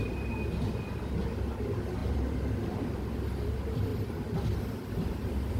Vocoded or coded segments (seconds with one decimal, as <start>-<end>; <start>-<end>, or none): none